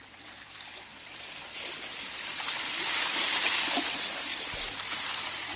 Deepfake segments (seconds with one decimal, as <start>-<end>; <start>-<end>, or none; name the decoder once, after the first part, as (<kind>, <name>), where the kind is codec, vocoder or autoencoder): none